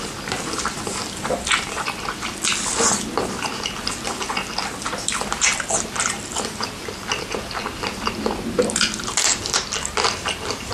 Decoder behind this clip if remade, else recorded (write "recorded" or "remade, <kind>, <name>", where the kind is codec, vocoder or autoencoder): recorded